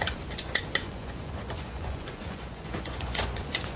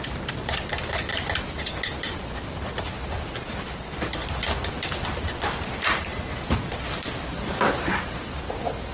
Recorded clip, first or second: second